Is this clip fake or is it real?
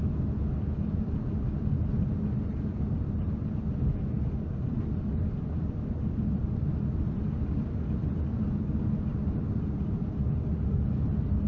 real